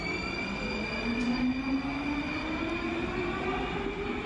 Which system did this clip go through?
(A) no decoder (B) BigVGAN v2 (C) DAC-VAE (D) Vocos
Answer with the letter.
A